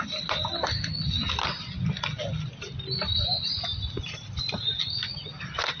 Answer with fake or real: real